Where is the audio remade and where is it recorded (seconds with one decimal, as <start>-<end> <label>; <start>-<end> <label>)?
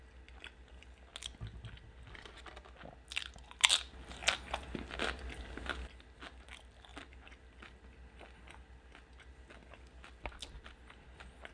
0.0-11.5 recorded